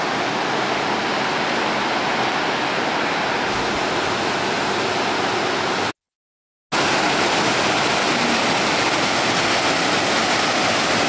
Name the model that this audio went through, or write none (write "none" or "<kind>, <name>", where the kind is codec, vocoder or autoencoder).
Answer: none